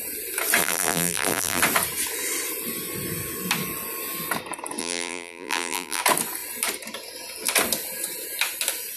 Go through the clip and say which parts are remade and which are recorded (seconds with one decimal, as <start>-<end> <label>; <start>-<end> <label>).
0.0-0.6 recorded; 0.6-1.6 remade; 1.6-4.8 recorded; 4.8-6.0 remade; 6.0-9.0 recorded